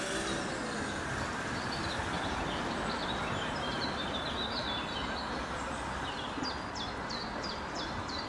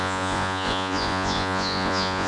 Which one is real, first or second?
first